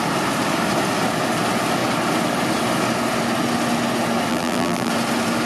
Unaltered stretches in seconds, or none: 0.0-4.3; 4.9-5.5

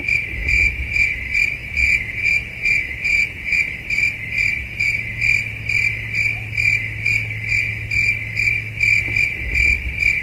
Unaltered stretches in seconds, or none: 0.0-0.4; 1.2-1.6; 3.6-4.5; 5.2-10.2

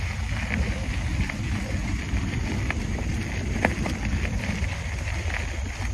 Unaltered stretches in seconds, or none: 0.0-1.1; 4.6-5.9